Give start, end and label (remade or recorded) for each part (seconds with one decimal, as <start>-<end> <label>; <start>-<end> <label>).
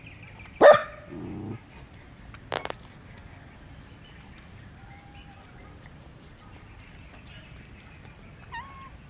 0.0-9.1 recorded